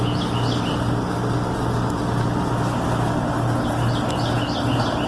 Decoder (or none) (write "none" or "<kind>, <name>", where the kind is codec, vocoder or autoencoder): none